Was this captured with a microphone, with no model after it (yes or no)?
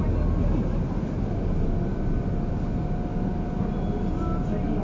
yes